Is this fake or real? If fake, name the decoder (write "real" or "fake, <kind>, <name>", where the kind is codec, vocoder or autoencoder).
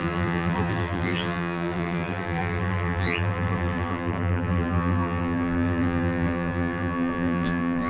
fake, vocoder, BigVGAN v2